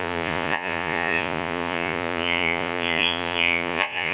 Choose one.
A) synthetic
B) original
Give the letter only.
A